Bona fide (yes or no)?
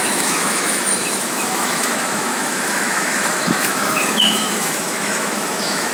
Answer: no